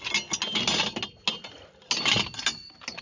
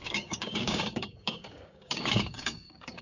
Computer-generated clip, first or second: second